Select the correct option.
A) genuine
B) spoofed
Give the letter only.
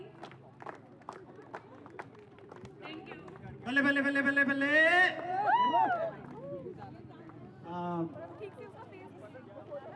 A